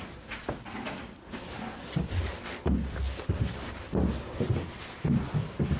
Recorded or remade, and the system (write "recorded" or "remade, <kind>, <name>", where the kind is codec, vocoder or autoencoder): recorded